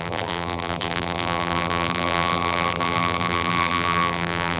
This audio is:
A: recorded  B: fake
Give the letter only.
B